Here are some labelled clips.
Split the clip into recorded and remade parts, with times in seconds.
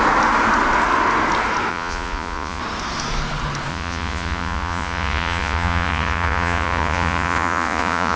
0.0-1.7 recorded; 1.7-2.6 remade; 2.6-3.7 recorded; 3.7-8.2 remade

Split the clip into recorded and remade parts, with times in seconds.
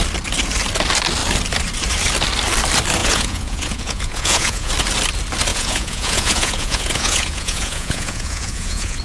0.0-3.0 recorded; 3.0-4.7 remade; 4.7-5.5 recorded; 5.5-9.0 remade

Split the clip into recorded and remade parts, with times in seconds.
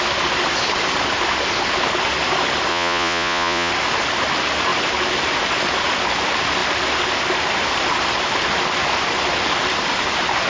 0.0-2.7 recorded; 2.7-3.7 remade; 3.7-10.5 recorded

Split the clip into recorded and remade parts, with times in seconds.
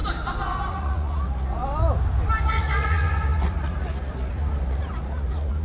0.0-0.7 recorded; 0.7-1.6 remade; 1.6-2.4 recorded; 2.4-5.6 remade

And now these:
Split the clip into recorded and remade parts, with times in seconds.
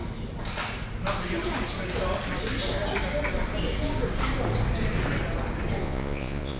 0.0-5.8 recorded; 5.8-6.6 remade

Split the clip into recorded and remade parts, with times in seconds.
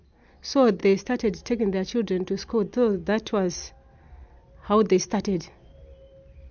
0.0-6.5 recorded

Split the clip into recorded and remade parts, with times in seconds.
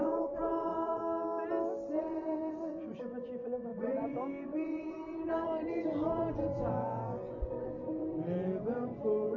0.0-1.0 remade; 1.0-2.0 recorded; 2.0-9.4 remade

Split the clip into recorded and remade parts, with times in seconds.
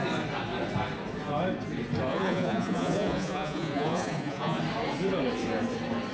0.0-2.1 recorded; 2.1-4.6 remade; 4.6-6.1 recorded